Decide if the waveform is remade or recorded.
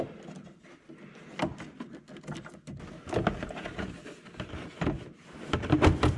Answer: recorded